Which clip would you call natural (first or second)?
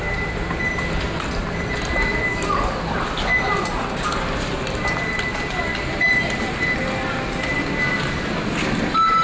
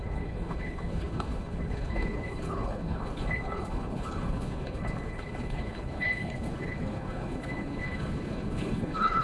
first